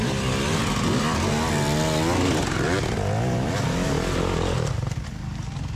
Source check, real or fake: real